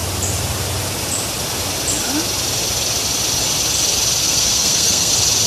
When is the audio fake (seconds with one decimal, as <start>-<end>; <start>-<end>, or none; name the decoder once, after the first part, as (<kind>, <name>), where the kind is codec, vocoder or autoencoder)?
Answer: 4.2-5.1 (codec, SNAC)